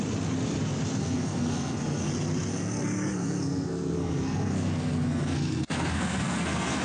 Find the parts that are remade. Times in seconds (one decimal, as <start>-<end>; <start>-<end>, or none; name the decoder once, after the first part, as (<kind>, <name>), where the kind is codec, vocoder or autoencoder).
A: 1.0-2.1 (codec, SNAC); 2.5-6.8